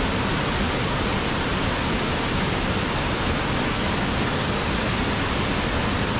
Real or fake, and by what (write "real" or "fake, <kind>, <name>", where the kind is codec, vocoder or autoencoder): real